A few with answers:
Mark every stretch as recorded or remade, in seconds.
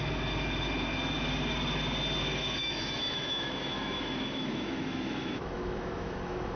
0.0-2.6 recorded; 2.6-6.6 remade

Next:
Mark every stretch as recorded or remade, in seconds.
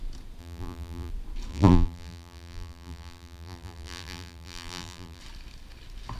0.0-0.4 recorded; 0.4-1.1 remade; 1.1-1.5 recorded; 1.5-5.2 remade; 5.2-6.2 recorded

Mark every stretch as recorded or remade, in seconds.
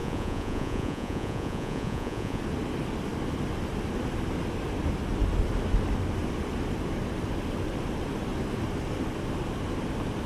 0.0-2.4 remade; 2.4-10.3 recorded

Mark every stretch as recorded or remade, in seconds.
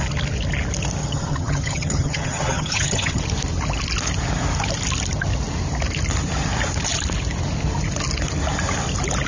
0.0-1.0 recorded; 1.0-3.2 remade; 3.2-9.3 recorded